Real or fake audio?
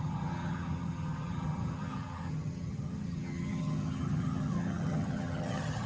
fake